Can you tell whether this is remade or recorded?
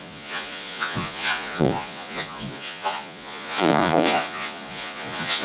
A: remade